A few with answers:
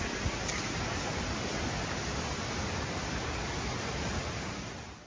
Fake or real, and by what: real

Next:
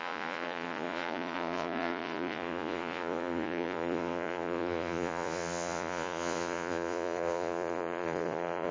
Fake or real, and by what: fake, vocoder, Vocos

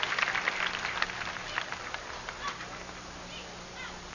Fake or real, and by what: real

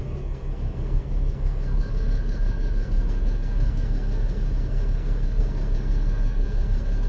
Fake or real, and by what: fake, codec, SNAC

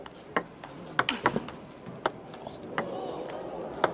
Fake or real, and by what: real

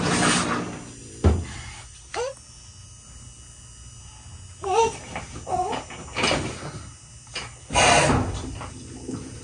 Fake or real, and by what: real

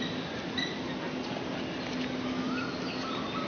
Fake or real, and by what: real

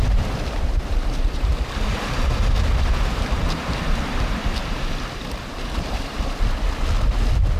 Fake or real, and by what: fake, vocoder, BigVGAN v2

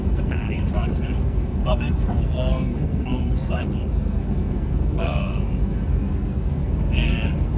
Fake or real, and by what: fake, codec, SNAC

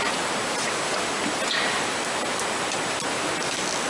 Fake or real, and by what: real